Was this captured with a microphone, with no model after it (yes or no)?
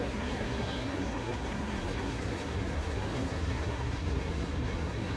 no